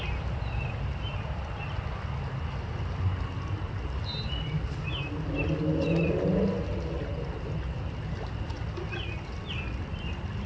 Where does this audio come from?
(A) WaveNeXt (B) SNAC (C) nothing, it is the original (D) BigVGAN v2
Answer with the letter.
C